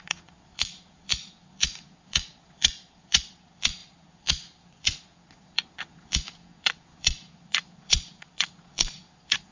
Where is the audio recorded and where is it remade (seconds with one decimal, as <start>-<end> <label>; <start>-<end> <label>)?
0.0-9.5 remade